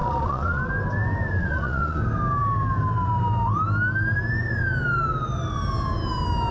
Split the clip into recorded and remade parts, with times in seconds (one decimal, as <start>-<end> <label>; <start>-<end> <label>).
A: 0.0-0.6 remade; 0.6-1.4 recorded; 1.4-2.0 remade; 2.0-6.5 recorded